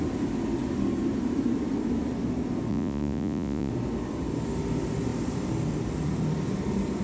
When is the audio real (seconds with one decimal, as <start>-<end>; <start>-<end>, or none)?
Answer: 0.0-2.7; 3.7-7.0